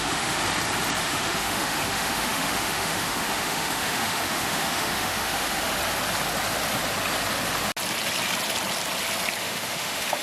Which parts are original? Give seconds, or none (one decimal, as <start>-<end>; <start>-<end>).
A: 0.4-1.0; 5.8-9.4